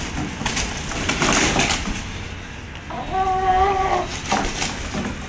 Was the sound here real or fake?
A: real